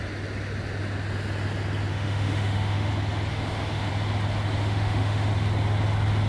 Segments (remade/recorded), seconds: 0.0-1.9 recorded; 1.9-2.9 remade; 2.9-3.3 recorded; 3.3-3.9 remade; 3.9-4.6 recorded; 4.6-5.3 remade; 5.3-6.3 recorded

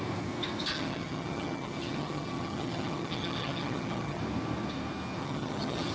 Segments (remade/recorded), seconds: 0.0-0.7 recorded; 0.7-4.2 remade; 4.2-5.2 recorded; 5.2-5.9 remade

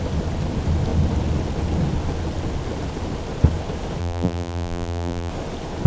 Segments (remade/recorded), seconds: 0.0-4.0 recorded; 4.0-5.3 remade; 5.3-5.9 recorded

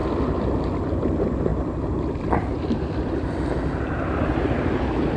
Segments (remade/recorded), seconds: 0.0-5.2 recorded

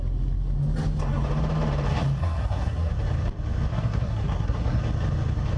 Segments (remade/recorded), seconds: 0.0-2.2 recorded; 2.2-2.9 remade; 2.9-3.7 recorded; 3.7-4.8 remade; 4.8-5.6 recorded